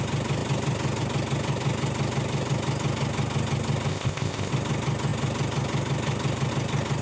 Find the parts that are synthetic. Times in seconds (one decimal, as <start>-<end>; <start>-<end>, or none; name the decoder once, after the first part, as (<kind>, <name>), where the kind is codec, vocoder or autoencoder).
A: 3.9-4.5 (codec, ZipCodec)